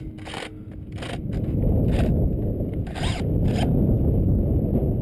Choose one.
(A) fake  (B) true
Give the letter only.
B